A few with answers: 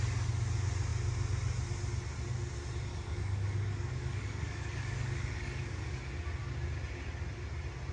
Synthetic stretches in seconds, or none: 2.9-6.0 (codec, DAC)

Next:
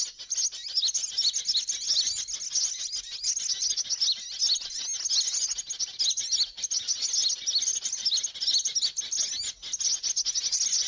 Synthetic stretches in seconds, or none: none

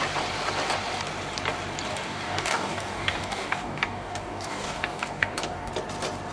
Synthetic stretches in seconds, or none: 1.9-5.7 (codec, DAC)